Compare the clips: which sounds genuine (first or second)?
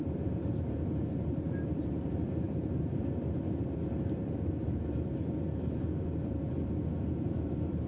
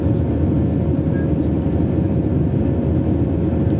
second